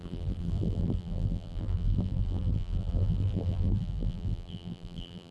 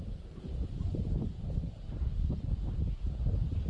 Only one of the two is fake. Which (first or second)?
first